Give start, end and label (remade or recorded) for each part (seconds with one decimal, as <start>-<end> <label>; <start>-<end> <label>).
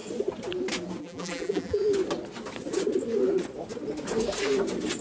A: 0.0-1.0 recorded; 1.0-1.8 remade; 1.8-5.0 recorded